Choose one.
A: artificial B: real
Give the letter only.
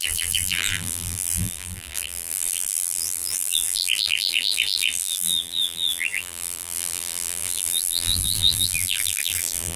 A